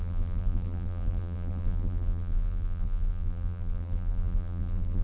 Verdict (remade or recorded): remade